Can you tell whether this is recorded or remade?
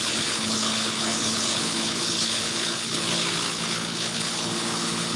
remade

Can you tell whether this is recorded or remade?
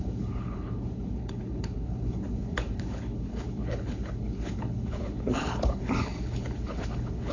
remade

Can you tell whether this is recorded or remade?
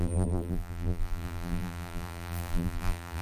remade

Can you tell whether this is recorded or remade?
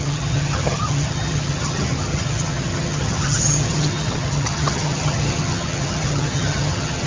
remade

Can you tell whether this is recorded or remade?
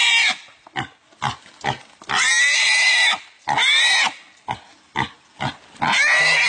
recorded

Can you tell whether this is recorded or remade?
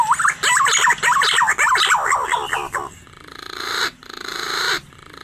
recorded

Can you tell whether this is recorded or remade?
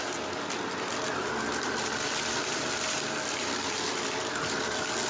remade